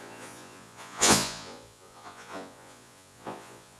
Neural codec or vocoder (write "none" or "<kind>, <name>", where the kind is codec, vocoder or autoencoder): vocoder, Vocos